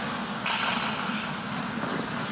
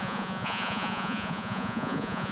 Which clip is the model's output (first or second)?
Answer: second